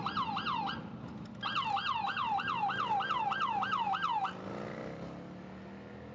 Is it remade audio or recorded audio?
recorded